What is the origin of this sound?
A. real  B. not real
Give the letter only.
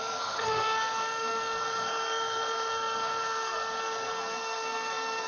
B